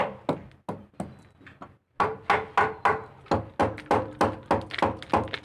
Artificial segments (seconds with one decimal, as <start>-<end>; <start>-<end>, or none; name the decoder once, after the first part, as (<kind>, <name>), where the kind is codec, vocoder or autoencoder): none